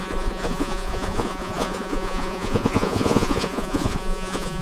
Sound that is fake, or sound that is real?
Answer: fake